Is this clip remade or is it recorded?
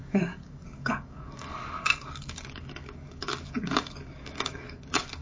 remade